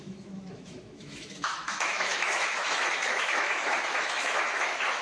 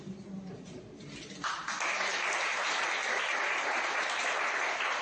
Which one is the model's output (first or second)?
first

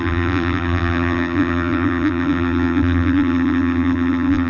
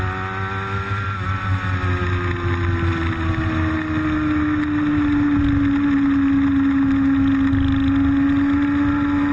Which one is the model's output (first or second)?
first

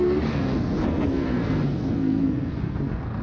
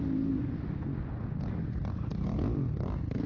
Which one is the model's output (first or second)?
first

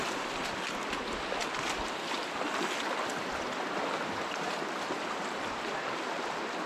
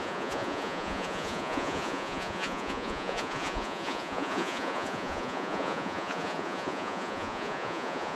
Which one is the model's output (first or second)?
second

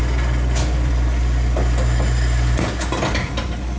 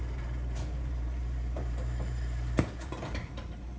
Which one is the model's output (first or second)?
second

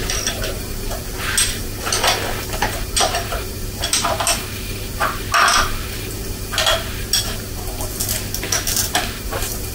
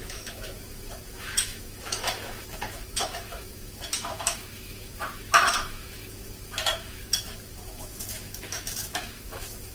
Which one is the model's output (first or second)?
second